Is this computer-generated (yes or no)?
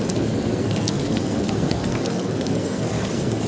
yes